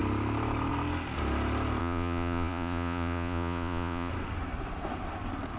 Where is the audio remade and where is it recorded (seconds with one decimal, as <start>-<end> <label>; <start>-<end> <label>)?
0.0-1.8 recorded; 1.8-4.1 remade; 4.1-5.6 recorded